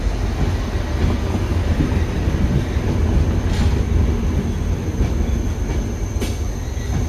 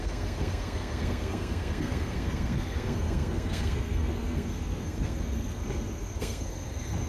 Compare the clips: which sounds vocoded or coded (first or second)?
second